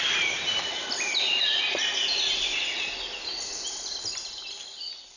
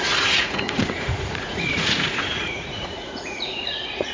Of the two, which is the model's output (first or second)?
second